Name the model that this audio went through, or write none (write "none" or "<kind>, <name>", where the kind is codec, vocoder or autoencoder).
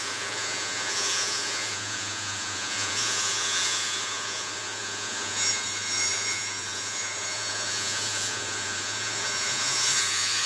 vocoder, Vocos